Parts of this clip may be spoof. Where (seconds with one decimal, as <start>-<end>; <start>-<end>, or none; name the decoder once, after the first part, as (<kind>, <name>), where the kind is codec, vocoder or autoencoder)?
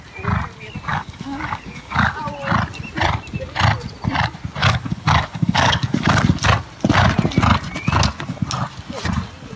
0.9-2.2 (codec, DAC); 4.6-6.2